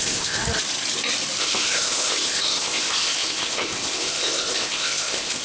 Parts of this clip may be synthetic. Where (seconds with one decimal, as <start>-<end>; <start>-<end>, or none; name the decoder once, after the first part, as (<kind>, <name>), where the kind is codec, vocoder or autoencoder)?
0.0-0.4 (codec, ZipCodec); 1.4-5.4